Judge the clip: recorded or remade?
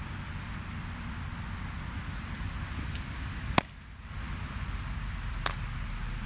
recorded